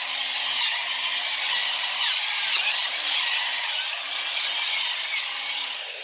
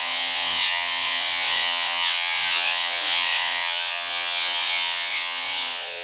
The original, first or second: first